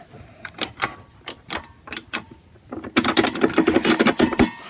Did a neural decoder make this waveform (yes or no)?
no